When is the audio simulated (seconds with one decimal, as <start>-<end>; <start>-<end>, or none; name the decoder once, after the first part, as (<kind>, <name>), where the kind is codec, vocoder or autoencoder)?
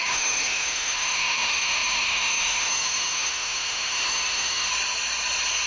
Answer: 0.0-4.7 (autoencoder, DAC-VAE)